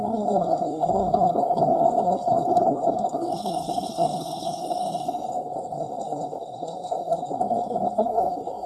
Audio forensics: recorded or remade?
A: remade